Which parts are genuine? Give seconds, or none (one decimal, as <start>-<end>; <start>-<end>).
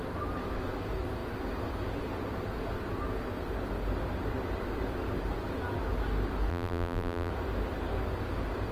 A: 0.0-6.5; 7.3-8.7